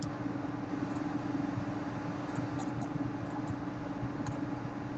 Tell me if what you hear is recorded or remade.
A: recorded